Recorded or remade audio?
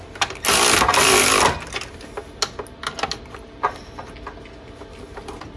recorded